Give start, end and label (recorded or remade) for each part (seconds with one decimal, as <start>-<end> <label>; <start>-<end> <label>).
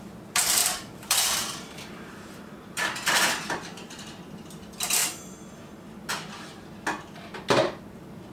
0.0-5.0 remade; 5.0-8.3 recorded